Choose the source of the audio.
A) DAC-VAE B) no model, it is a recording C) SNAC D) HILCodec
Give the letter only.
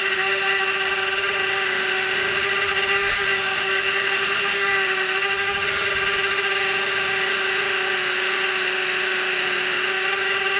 A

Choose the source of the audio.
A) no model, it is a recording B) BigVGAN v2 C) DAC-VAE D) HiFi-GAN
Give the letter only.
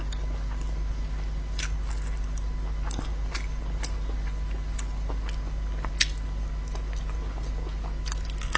A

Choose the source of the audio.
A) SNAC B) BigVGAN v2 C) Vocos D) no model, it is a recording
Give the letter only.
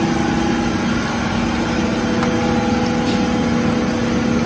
D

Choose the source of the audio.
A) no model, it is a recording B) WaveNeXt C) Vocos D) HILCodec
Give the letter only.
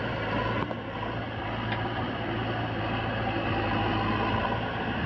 A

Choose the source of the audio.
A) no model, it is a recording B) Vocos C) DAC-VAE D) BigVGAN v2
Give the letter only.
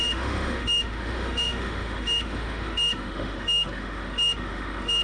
C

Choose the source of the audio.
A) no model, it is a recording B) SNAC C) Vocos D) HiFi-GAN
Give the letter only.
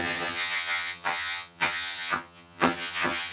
D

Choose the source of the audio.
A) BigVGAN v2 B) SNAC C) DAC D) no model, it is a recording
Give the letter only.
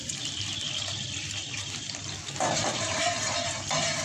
A